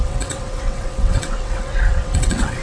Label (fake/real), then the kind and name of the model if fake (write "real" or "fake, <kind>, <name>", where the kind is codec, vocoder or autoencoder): fake, vocoder, WaveNeXt